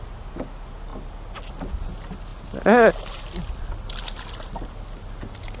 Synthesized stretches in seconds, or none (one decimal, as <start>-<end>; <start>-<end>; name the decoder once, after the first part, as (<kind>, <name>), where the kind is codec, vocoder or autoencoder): none